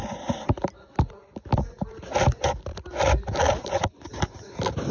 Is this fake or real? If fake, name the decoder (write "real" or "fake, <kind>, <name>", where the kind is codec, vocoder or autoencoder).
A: real